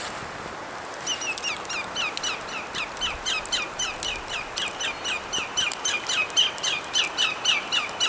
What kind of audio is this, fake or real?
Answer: real